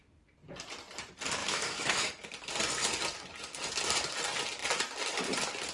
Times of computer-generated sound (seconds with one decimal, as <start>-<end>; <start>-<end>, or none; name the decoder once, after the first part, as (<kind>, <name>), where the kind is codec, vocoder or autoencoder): 1.4-2.1 (autoencoder, DAC-VAE)